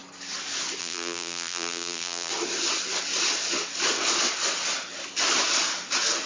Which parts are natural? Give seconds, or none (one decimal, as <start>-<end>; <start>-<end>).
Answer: 0.0-0.8; 2.3-6.3